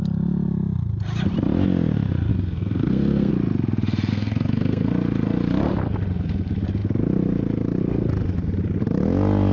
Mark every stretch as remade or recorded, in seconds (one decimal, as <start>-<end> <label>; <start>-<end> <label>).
0.0-2.3 recorded; 2.3-3.3 remade; 3.3-4.1 recorded; 4.1-4.9 remade; 4.9-9.5 recorded